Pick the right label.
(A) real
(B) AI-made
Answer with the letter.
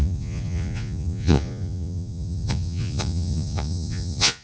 B